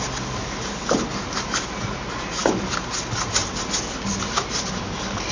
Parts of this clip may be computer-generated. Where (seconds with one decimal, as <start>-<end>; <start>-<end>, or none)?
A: none